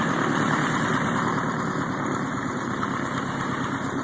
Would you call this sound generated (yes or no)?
no